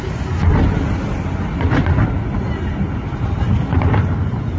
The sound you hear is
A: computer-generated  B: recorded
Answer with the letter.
B